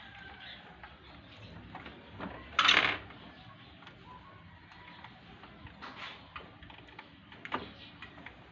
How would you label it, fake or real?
real